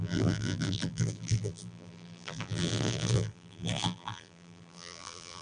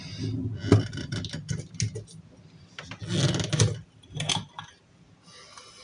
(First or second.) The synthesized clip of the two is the first